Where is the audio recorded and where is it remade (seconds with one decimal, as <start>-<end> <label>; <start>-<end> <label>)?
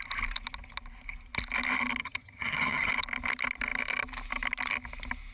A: 0.0-2.0 recorded; 2.0-2.9 remade; 2.9-5.3 recorded